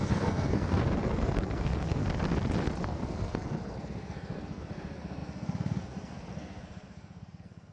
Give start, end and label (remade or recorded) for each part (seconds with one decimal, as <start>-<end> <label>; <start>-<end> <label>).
0.0-2.0 remade; 2.0-2.8 recorded; 2.8-7.7 remade